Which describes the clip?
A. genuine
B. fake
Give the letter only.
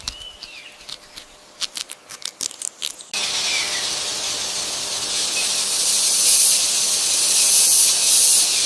A